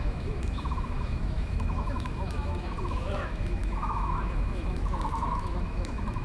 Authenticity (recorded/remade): remade